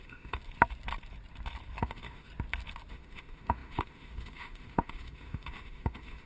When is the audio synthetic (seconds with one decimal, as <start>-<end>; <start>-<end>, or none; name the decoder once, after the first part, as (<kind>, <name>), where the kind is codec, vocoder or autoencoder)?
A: 0.0-0.4 (autoencoder, DAC-VAE); 1.8-2.3; 2.9-6.3